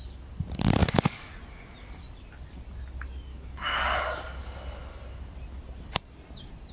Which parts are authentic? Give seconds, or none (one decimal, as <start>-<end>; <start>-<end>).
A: 0.0-0.8; 1.3-3.3; 4.3-6.7